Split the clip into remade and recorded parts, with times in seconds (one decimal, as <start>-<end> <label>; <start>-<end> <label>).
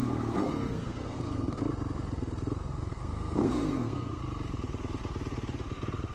0.0-1.6 remade; 1.6-2.9 recorded; 2.9-4.2 remade; 4.2-6.1 recorded